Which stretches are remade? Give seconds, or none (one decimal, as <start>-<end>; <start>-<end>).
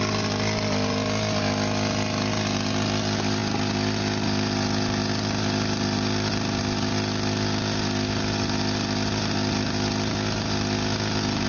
none